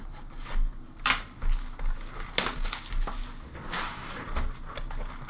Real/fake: real